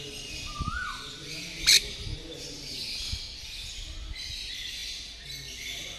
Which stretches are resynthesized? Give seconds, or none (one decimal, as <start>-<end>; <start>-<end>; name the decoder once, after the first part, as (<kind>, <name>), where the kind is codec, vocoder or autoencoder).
none